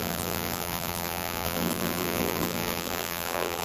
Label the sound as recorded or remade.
remade